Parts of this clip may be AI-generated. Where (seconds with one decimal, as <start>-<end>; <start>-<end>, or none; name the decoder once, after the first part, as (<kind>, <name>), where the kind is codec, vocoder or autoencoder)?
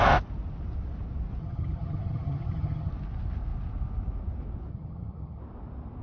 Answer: 1.4-2.9 (vocoder, HiFi-GAN); 4.7-5.4